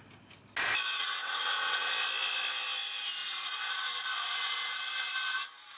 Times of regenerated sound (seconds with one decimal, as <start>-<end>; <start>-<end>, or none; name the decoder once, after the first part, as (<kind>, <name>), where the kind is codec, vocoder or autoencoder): 0.9-1.9 (vocoder, WaveNeXt)